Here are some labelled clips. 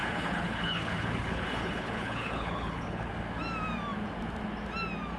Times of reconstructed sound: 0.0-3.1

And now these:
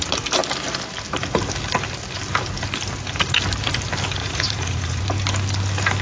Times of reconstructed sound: 4.2-5.0

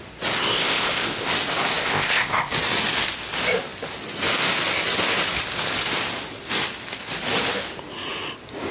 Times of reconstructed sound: 0.5-1.3; 1.8-2.5

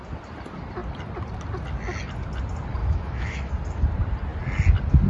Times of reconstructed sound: 2.8-3.5

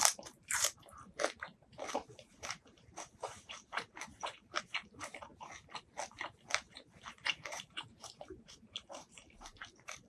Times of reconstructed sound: 0.0-5.3; 6.5-10.1